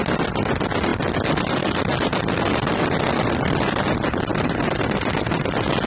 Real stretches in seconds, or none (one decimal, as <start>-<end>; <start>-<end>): 0.0-5.9